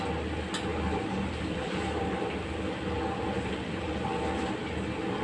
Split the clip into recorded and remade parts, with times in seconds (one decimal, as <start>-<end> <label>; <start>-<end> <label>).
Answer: 0.0-0.7 recorded; 0.7-3.8 remade; 3.8-5.2 recorded